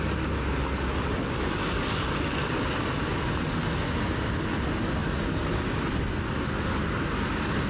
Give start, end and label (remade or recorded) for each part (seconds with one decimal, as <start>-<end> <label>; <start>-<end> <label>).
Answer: 0.0-7.7 recorded